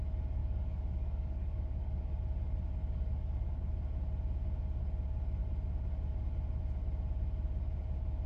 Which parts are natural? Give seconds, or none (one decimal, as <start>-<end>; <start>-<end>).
0.0-0.4; 2.1-2.8; 3.7-8.3